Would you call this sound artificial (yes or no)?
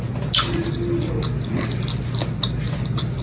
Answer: no